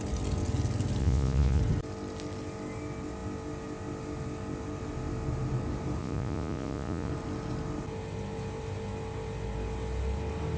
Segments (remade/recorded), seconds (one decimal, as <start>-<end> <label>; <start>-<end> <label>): 0.0-1.0 recorded; 1.0-1.6 remade; 1.6-6.0 recorded; 6.0-7.1 remade; 7.1-10.6 recorded